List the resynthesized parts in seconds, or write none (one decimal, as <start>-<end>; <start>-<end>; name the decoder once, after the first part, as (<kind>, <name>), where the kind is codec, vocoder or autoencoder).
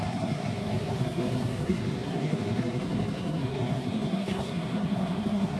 0.0-5.6 (codec, SNAC)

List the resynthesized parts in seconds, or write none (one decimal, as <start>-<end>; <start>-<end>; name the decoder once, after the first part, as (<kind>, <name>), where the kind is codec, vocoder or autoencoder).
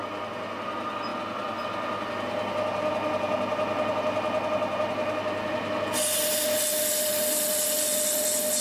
none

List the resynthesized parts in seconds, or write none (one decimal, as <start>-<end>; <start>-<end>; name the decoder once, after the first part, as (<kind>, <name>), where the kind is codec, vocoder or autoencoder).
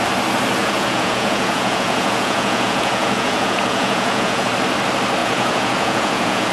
0.6-4.5 (vocoder, Vocos); 5.2-6.5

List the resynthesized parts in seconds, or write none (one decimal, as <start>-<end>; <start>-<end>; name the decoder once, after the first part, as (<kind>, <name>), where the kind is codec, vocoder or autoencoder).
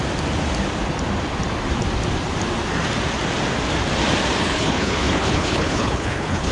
4.4-6.5 (codec, HILCodec)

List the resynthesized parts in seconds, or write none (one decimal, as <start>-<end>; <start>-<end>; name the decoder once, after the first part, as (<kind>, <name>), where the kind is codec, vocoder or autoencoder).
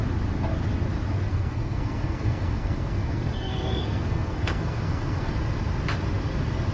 1.3-5.3 (codec, SNAC)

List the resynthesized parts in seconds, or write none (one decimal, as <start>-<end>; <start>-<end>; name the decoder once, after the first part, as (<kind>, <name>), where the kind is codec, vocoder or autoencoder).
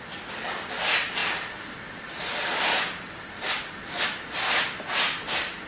none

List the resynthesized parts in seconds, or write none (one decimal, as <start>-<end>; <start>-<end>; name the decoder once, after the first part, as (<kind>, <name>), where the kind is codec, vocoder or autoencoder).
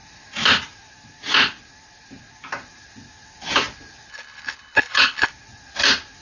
4.1-5.3 (codec, HILCodec)